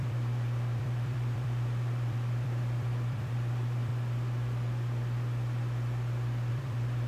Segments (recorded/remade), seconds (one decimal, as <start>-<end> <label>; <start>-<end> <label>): 0.0-3.9 remade; 3.9-6.5 recorded; 6.5-7.1 remade